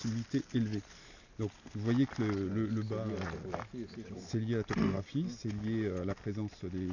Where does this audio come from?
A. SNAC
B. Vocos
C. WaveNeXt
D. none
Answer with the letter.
D